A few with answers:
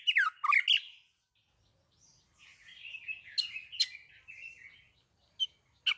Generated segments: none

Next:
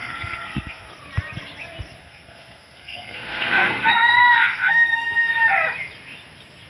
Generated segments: 0.0-0.9 (codec, SNAC); 2.0-5.3

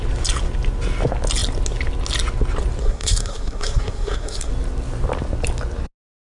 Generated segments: 2.8-4.5 (codec, SNAC)

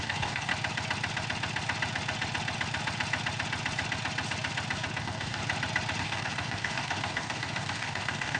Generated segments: 0.0-0.5 (codec, DAC); 5.0-5.4; 6.0-8.4

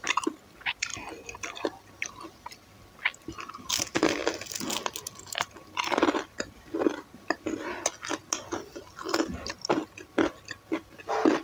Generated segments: 0.9-2.5 (vocoder, BigVGAN v2)

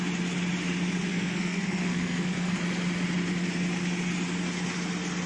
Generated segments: 1.1-2.6 (codec, SNAC)

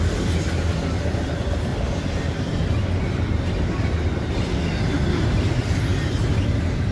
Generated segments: 1.7-3.0 (vocoder, BigVGAN v2)

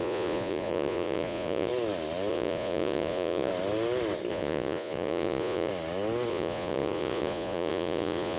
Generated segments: 0.0-1.7 (vocoder, Vocos); 2.3-3.5; 4.3-5.7; 6.3-8.4